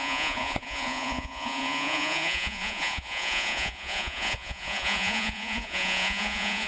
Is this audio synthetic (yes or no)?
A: yes